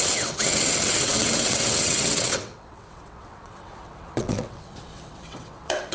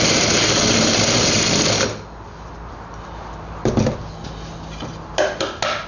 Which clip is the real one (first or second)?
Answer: second